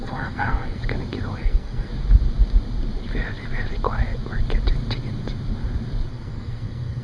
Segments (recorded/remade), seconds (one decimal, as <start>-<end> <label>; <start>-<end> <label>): 0.0-0.8 remade; 0.8-1.4 recorded; 1.4-1.9 remade; 1.9-6.1 recorded; 6.1-7.0 remade